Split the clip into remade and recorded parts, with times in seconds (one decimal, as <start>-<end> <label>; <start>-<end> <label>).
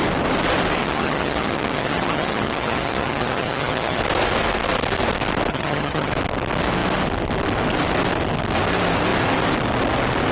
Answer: 0.0-0.8 recorded; 0.8-4.0 remade; 4.0-5.5 recorded; 5.5-6.1 remade; 6.1-10.3 recorded